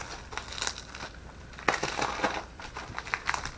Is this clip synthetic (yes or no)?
no